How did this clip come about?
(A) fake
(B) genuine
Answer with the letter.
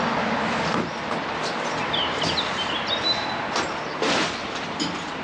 B